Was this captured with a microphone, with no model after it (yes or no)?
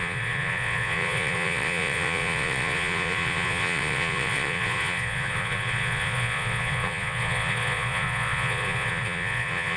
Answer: no